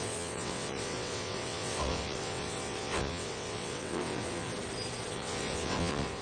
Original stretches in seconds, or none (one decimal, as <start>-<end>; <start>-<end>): 4.5-5.1